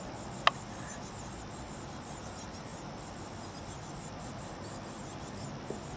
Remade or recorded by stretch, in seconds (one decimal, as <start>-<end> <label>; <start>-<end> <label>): 0.0-6.0 recorded